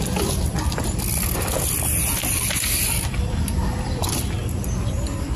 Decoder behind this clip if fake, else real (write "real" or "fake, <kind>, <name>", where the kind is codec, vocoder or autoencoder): fake, vocoder, BigVGAN v2